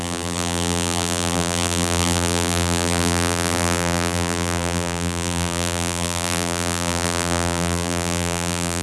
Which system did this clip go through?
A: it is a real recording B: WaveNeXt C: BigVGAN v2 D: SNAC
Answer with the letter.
C